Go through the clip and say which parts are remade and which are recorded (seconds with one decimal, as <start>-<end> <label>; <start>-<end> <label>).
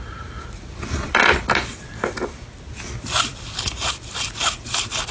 0.0-5.1 recorded